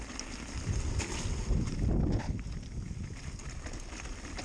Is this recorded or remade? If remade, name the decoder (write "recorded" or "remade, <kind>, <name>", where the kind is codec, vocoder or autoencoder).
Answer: recorded